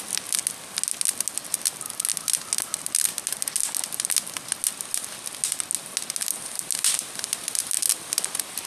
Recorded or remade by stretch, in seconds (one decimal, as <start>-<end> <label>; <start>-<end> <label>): 0.0-8.7 recorded